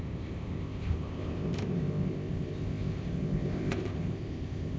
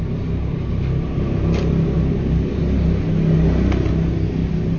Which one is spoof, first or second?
first